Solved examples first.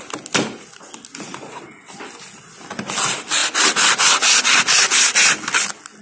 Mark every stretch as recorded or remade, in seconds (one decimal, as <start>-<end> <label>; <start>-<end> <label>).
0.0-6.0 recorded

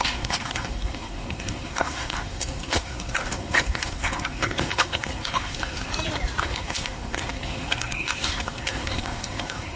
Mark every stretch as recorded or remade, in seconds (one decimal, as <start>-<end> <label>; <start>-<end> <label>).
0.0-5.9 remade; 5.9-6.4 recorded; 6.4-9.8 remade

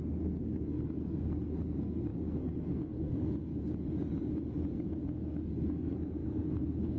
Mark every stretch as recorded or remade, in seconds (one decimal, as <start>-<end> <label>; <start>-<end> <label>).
0.0-3.6 remade; 3.6-4.7 recorded; 4.7-7.0 remade

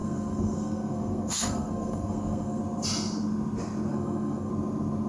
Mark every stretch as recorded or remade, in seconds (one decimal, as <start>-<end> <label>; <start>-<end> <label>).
0.0-2.6 remade; 2.6-3.9 recorded; 3.9-4.5 remade; 4.5-5.1 recorded

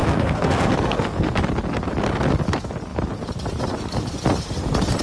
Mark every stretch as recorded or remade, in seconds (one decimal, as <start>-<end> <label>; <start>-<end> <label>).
0.0-1.4 remade; 1.4-5.0 recorded

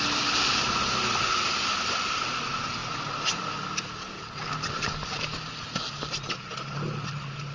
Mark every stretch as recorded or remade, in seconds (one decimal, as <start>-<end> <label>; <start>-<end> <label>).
0.0-7.5 recorded

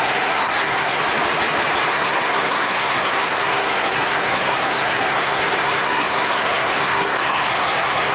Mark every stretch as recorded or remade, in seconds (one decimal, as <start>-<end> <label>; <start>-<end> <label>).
0.0-1.0 remade; 1.0-1.9 recorded; 1.9-8.1 remade